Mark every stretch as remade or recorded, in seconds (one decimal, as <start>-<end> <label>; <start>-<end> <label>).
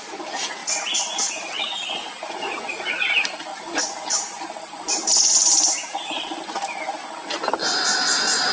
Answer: 0.0-0.6 recorded; 0.6-2.3 remade; 2.3-3.5 recorded; 3.5-6.4 remade; 6.4-8.5 recorded